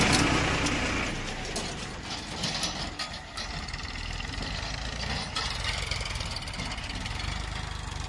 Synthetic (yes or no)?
no